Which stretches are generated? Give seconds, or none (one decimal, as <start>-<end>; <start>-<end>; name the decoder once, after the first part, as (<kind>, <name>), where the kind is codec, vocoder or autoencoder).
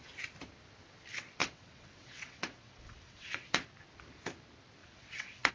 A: 1.4-3.5 (vocoder, WaveNeXt); 4.8-5.5